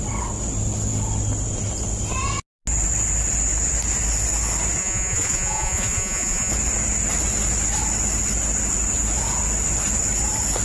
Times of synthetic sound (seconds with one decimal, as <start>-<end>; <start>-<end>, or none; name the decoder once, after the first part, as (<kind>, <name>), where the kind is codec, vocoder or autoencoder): 4.8-6.5 (vocoder, Vocos)